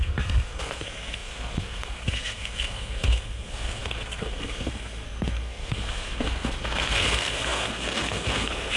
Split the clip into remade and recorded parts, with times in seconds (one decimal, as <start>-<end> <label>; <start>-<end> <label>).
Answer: 0.0-8.8 remade